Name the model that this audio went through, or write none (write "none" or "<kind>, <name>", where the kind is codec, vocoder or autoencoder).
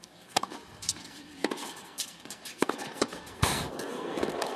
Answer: codec, SNAC